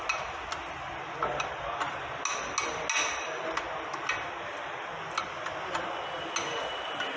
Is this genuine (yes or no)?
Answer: yes